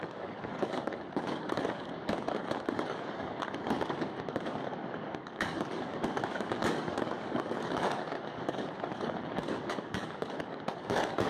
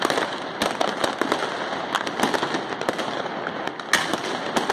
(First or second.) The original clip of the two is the second